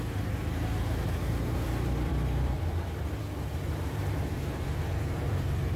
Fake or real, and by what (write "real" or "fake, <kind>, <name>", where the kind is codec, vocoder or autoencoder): fake, vocoder, BigVGAN v2